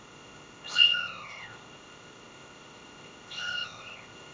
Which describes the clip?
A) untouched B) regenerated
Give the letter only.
B